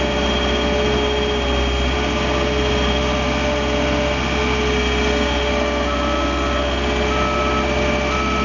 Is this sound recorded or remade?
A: recorded